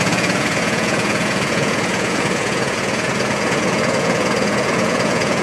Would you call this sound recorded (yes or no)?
no